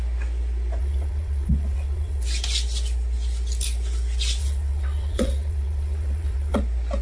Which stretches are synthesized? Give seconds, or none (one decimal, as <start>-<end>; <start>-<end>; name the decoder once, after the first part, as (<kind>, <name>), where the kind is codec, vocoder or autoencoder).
0.8-2.2 (vocoder, WaveNeXt); 4.4-6.6